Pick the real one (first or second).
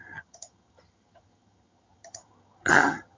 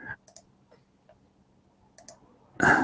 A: second